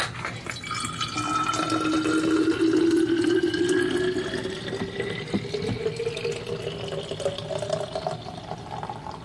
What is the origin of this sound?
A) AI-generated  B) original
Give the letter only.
B